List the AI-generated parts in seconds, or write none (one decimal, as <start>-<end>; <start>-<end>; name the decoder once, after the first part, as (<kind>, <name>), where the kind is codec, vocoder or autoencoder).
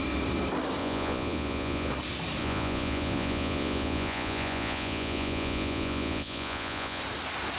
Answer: 0.8-1.9 (vocoder, Vocos); 2.4-7.0